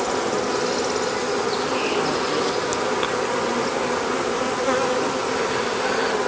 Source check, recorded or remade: recorded